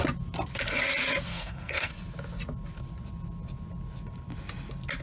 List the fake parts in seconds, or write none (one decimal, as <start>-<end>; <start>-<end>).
1.3-1.9